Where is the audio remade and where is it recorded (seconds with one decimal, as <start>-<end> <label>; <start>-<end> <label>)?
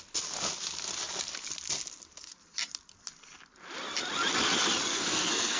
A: 0.0-4.9 recorded; 4.9-5.6 remade